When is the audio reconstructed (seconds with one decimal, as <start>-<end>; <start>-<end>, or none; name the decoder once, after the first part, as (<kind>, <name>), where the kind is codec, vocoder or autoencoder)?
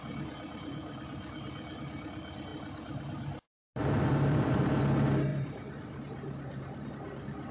3.8-4.8 (vocoder, BigVGAN v2); 5.3-6.9